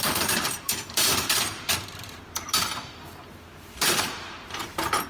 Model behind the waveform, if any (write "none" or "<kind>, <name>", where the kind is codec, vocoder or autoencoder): vocoder, BigVGAN v2